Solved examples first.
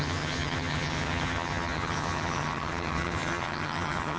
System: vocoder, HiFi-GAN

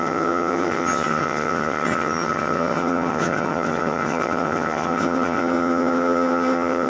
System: vocoder, HiFi-GAN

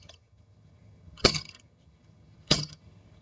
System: vocoder, HiFi-GAN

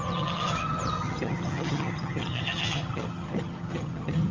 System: vocoder, HiFi-GAN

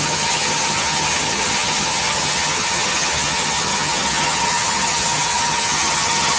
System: vocoder, HiFi-GAN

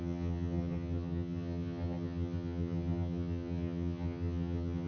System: vocoder, HiFi-GAN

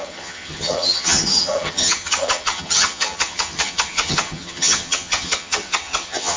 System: vocoder, HiFi-GAN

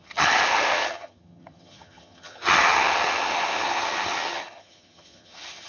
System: vocoder, HiFi-GAN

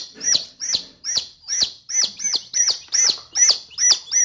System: none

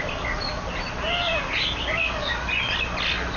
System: none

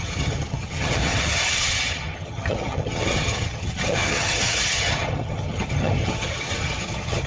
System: vocoder, HiFi-GAN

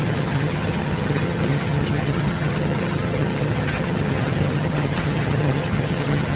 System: vocoder, HiFi-GAN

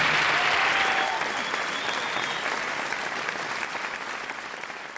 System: none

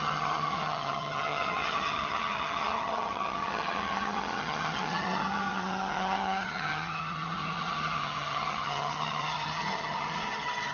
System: vocoder, HiFi-GAN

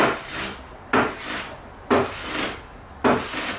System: none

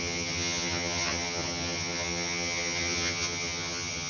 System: vocoder, HiFi-GAN